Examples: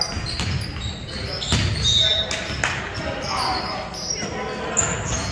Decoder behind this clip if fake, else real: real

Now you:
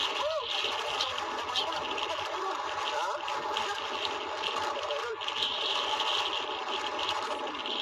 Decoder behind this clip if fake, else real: real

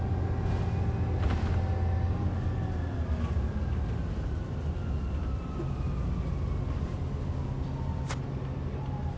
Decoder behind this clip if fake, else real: real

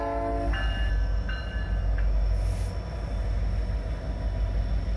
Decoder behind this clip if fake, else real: real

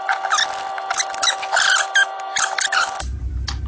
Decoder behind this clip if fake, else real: real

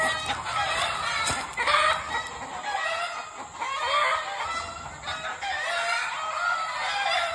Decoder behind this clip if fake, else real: real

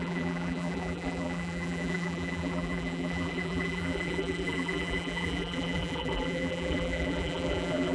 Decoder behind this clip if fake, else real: fake, vocoder, BigVGAN v2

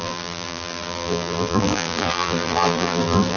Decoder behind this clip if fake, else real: fake, vocoder, BigVGAN v2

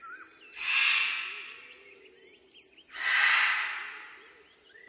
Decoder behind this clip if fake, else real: real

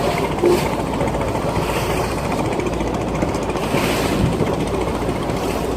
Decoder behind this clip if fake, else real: fake, vocoder, BigVGAN v2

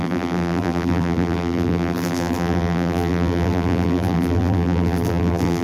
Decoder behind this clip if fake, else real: fake, vocoder, BigVGAN v2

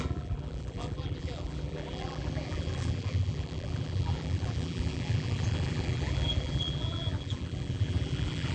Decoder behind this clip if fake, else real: fake, vocoder, BigVGAN v2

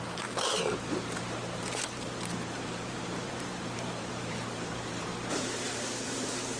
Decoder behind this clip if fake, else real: fake, vocoder, BigVGAN v2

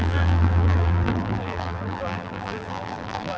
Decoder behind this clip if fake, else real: fake, vocoder, BigVGAN v2